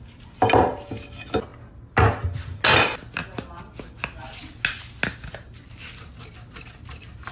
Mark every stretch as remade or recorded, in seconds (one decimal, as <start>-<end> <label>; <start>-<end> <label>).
0.0-7.3 recorded